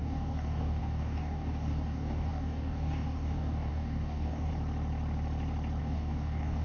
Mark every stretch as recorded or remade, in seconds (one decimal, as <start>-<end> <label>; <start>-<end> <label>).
0.0-4.5 remade; 4.5-5.8 recorded; 5.8-6.6 remade